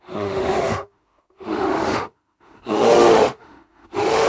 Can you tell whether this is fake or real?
fake